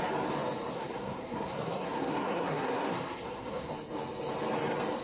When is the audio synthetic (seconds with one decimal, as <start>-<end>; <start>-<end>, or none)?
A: 0.7-3.7

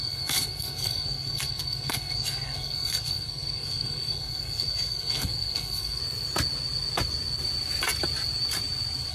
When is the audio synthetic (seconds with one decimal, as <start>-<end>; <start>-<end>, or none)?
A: 0.0-6.0

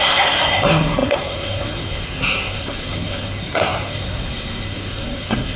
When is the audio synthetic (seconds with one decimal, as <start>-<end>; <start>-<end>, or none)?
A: 0.0-5.6